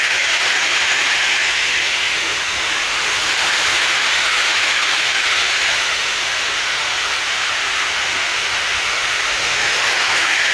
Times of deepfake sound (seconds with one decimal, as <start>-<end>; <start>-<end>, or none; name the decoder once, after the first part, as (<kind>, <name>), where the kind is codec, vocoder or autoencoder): 0.0-10.5 (autoencoder, DAC-VAE)